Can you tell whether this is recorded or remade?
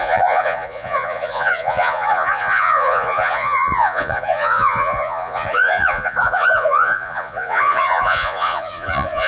remade